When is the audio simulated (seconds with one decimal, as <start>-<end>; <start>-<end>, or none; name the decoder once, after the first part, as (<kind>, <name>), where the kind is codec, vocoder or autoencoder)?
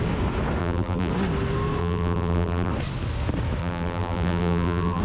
0.6-1.1 (vocoder, BigVGAN v2); 1.8-2.7; 3.6-5.0